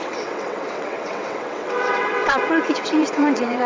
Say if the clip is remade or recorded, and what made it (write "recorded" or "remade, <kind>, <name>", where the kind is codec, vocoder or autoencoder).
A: remade, vocoder, WaveNeXt